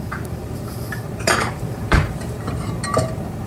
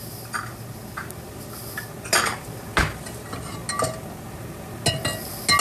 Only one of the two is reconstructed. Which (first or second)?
first